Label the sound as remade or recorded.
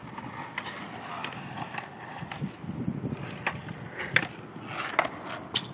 recorded